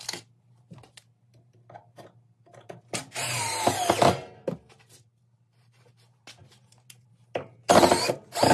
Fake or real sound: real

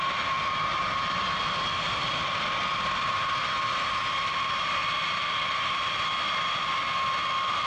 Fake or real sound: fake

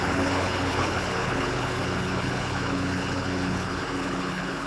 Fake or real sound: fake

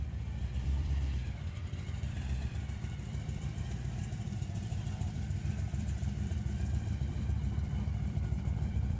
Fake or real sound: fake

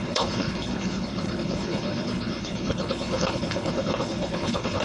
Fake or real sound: fake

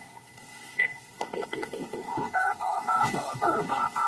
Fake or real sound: fake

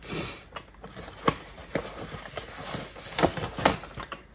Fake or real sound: real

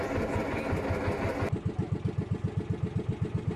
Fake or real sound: real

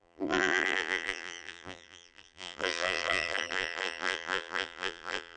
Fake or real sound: fake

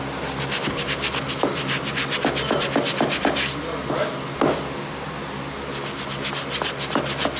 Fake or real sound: real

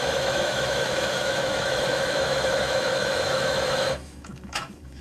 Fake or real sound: fake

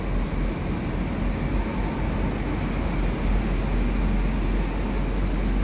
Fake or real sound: real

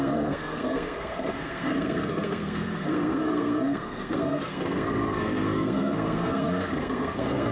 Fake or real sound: fake